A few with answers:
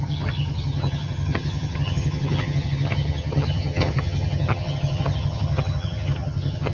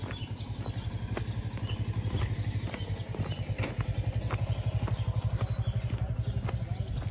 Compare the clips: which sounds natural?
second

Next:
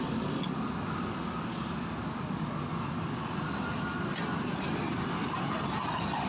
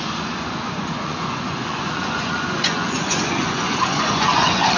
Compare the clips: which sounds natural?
first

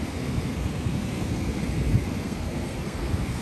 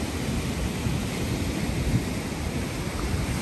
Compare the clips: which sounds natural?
second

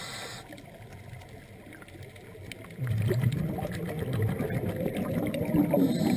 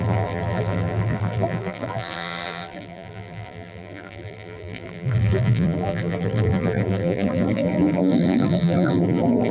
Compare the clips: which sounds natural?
first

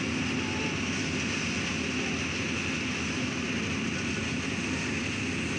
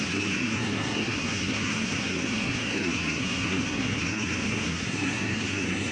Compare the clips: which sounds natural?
first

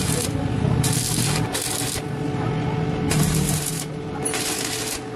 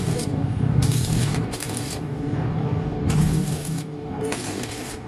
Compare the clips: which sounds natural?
first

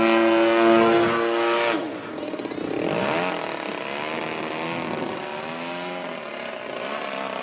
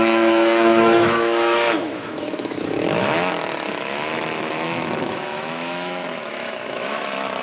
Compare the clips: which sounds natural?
first